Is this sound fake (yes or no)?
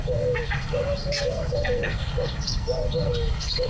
yes